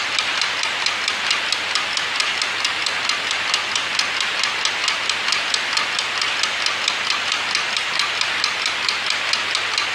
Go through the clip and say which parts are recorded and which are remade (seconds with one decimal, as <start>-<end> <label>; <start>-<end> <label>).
0.0-9.9 recorded